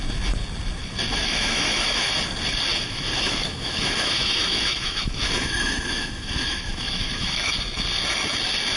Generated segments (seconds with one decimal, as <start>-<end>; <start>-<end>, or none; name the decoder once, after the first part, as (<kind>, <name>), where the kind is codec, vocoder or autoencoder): 1.1-2.1 (autoencoder, DAC-VAE); 2.7-7.5